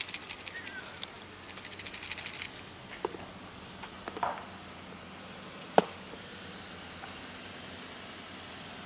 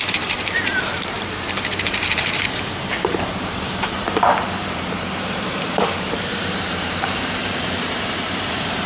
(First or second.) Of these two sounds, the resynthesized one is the second